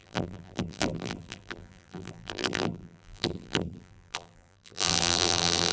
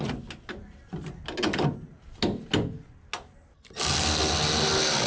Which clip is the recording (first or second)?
second